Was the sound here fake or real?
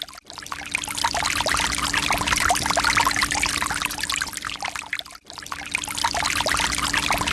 real